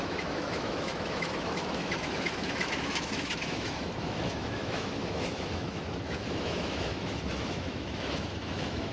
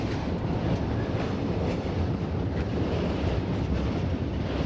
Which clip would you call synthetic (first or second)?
first